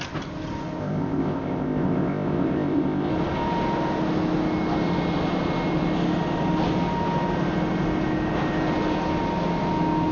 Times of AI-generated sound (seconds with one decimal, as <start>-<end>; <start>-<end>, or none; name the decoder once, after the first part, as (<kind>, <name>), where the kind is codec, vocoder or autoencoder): 0.8-3.1 (codec, ZipCodec)